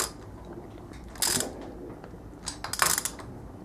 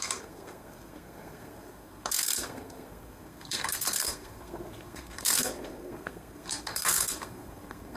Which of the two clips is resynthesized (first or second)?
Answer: second